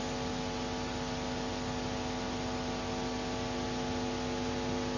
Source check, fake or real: real